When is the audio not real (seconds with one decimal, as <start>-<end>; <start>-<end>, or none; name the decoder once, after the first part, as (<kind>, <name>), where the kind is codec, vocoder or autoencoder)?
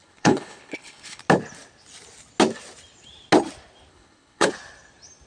0.0-1.2 (codec, HILCodec); 3.9-4.5